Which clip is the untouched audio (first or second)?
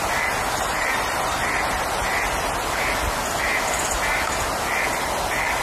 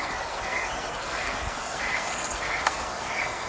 first